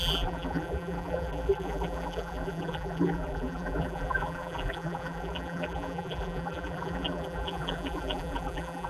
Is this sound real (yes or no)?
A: no